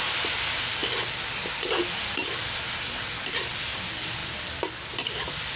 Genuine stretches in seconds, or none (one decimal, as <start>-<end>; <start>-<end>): 0.0-5.6